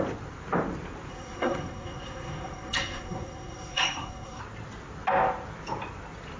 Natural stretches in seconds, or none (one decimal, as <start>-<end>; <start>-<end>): 0.0-1.1; 4.4-6.4